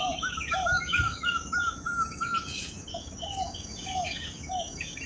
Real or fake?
fake